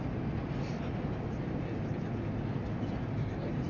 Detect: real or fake real